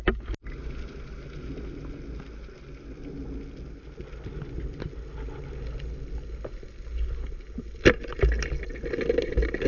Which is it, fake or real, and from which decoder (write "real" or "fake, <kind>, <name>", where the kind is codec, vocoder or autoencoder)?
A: real